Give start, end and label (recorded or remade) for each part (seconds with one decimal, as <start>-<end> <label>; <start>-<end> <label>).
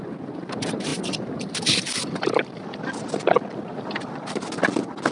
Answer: 0.0-5.1 remade